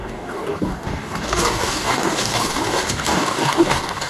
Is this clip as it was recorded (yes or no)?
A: no